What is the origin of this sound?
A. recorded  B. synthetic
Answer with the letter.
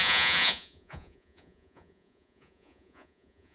B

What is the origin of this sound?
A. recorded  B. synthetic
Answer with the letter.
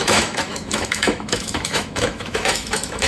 B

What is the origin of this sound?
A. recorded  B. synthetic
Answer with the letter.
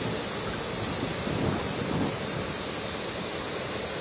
A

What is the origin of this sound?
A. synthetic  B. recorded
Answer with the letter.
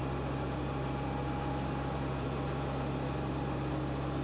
B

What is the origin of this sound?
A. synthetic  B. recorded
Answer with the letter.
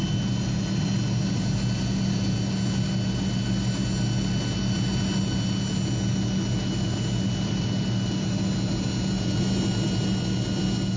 B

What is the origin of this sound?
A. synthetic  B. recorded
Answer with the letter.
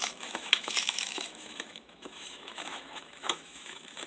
A